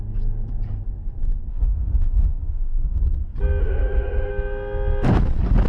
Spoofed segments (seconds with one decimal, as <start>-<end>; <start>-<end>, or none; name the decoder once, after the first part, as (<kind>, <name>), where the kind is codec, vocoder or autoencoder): 1.5-3.0 (autoencoder, DAC-VAE); 3.6-4.3